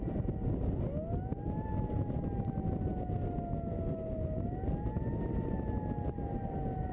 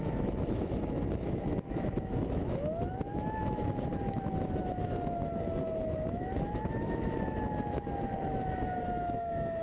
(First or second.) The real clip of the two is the first